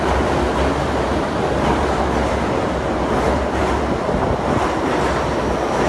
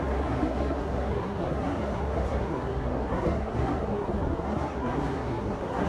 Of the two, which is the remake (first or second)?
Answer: second